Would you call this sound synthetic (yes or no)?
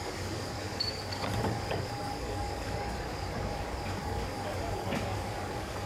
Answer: yes